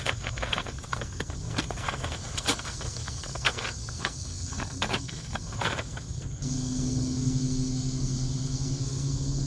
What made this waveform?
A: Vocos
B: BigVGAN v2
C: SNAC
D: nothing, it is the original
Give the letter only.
C